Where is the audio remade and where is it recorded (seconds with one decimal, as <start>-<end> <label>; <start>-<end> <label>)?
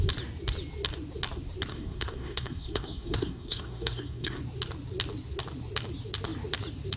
0.0-1.7 recorded; 1.7-4.4 remade; 4.4-7.0 recorded